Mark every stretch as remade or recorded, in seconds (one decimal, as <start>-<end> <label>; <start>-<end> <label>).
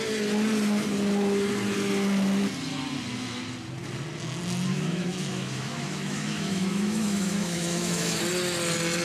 0.0-4.7 recorded; 4.7-8.2 remade; 8.2-9.0 recorded